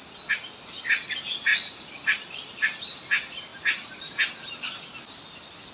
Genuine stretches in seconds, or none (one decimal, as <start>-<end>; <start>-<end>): 0.0-1.5; 2.8-5.7